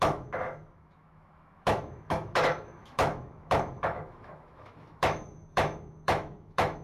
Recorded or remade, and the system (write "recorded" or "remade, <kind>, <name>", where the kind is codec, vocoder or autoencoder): remade, autoencoder, DAC-VAE